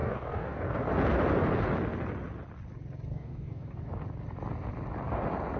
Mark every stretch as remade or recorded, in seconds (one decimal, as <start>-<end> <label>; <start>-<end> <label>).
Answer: 0.0-0.9 remade; 0.9-3.1 recorded; 3.1-3.9 remade; 3.9-5.6 recorded